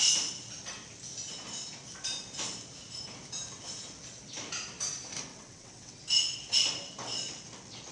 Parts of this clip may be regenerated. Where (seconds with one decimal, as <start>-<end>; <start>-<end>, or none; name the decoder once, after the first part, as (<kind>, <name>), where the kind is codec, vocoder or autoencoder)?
5.3-6.0 (vocoder, WaveNeXt)